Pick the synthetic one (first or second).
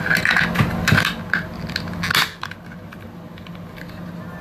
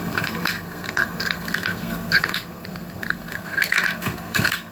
second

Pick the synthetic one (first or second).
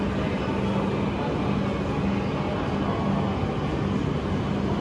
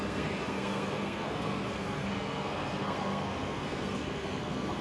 second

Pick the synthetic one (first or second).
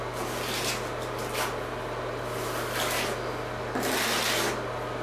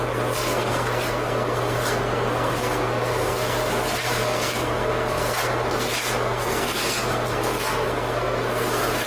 second